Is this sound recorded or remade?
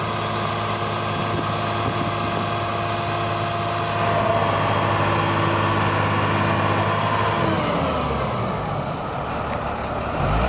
recorded